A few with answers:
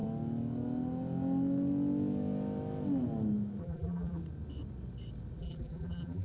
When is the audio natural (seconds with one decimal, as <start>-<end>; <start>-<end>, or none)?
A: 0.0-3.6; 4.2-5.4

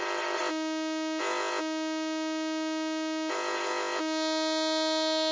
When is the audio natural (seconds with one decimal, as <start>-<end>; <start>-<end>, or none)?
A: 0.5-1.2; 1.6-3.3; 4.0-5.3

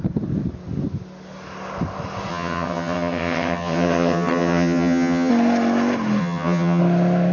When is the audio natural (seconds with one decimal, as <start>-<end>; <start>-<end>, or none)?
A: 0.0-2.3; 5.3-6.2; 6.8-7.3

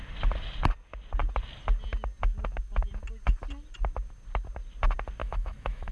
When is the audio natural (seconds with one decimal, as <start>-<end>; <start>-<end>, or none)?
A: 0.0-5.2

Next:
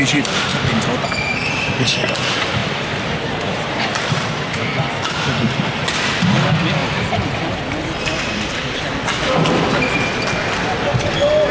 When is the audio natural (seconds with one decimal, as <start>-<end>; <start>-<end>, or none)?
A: 0.0-0.5; 2.0-2.6; 4.6-11.5

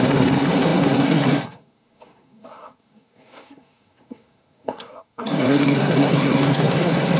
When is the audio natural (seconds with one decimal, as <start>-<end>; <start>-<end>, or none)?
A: none